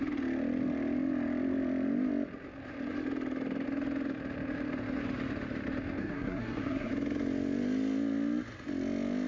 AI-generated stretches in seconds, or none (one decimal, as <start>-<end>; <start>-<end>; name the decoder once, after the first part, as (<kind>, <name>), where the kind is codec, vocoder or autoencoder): 6.0-6.9 (codec, SNAC)